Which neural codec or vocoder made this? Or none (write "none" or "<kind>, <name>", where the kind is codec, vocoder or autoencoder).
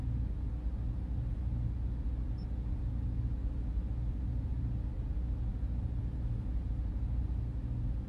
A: none